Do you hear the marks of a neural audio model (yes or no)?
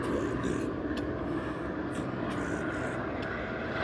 no